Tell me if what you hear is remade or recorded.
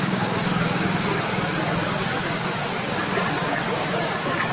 remade